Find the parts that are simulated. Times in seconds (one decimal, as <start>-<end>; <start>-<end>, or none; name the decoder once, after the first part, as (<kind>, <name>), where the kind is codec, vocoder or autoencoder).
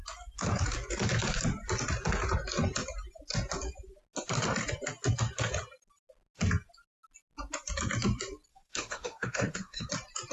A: 8.5-9.9 (autoencoder, DAC-VAE)